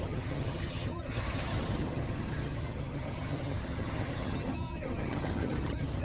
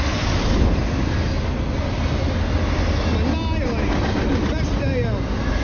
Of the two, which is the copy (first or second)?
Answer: first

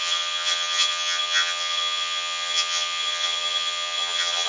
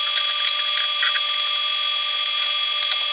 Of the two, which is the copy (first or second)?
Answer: first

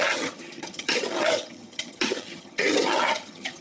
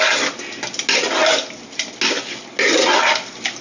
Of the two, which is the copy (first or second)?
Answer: first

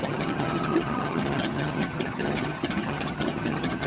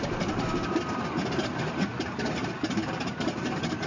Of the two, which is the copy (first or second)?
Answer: first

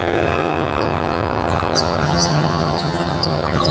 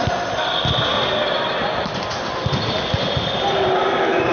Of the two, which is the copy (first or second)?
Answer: first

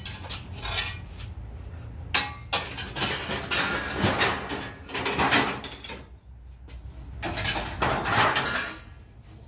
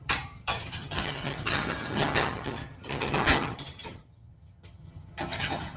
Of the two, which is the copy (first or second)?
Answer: second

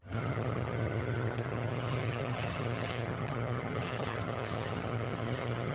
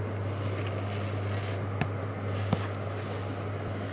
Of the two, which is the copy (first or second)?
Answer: first